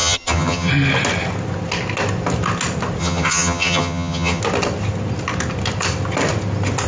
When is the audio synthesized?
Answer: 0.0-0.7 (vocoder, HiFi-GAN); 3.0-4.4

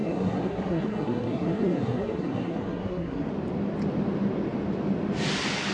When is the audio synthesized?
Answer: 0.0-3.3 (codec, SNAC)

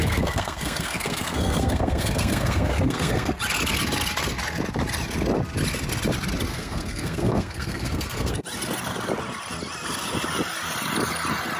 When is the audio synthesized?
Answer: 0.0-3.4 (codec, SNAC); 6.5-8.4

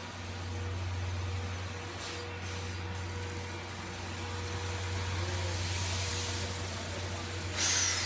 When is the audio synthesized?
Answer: none

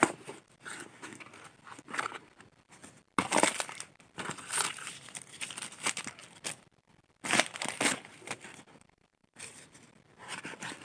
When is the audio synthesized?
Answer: 9.2-10.4 (vocoder, BigVGAN v2)

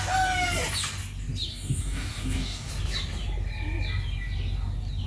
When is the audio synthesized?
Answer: 1.5-2.7 (codec, DAC)

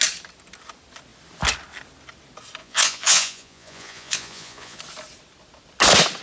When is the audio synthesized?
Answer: 2.6-4.8 (vocoder, Vocos)